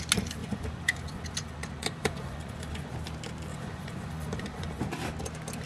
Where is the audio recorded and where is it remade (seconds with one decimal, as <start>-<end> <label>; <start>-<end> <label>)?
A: 0.0-0.4 recorded; 0.4-2.9 remade; 2.9-3.5 recorded; 3.5-4.8 remade; 4.8-5.7 recorded